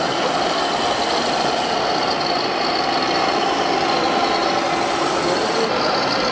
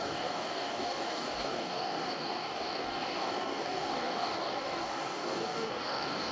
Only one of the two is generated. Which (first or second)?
second